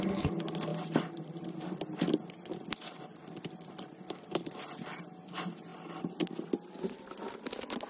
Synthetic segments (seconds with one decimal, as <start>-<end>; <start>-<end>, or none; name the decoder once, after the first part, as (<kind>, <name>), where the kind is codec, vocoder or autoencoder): none